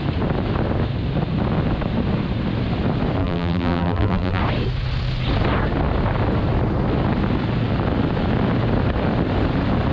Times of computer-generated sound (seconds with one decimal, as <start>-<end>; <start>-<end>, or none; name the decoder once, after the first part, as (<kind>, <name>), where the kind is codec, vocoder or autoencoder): 3.2-4.4 (vocoder, BigVGAN v2)